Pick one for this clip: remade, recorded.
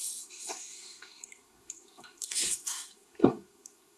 remade